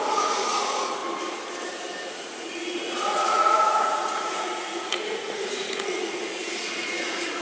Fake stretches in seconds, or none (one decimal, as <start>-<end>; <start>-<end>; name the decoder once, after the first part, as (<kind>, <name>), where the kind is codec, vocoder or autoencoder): 0.0-1.0 (vocoder, Vocos); 2.1-7.4